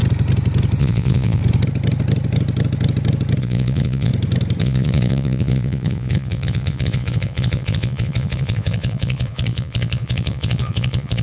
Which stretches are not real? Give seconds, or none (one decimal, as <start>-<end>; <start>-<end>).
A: 0.8-1.4; 3.4-4.1; 4.6-11.2